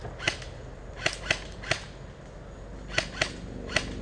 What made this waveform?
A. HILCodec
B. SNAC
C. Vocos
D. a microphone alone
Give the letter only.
D